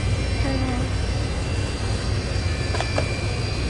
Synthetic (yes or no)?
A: no